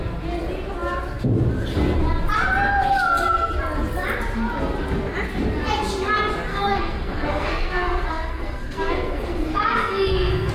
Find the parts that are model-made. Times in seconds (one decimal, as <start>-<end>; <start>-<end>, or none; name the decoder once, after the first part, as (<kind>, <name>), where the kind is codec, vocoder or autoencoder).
6.5-10.5 (codec, SNAC)